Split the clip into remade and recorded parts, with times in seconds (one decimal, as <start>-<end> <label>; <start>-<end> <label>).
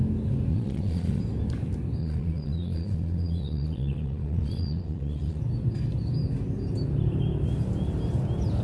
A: 0.0-0.5 recorded; 0.5-1.2 remade; 1.2-2.0 recorded; 2.0-5.4 remade; 5.4-8.6 recorded